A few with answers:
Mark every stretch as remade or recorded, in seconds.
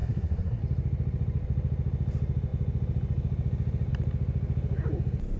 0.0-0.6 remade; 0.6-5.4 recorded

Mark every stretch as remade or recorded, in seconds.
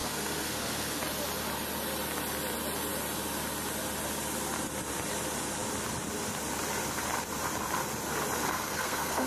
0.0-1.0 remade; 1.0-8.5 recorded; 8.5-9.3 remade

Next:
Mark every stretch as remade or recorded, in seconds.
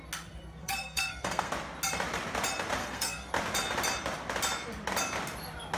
0.0-0.6 recorded; 0.6-1.5 remade; 1.5-2.8 recorded; 2.8-3.3 remade; 3.3-5.8 recorded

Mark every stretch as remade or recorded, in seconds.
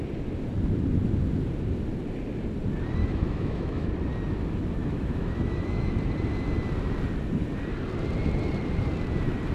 0.0-3.0 recorded; 3.0-3.9 remade; 3.9-4.8 recorded; 4.8-6.0 remade; 6.0-9.5 recorded